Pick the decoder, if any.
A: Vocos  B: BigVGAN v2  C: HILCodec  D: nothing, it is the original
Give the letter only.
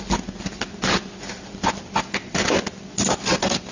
D